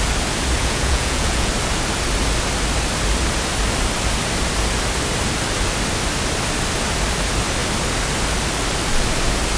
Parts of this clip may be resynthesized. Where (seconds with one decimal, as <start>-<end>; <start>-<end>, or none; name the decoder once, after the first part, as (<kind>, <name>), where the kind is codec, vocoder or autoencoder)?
0.6-1.5 (vocoder, Vocos)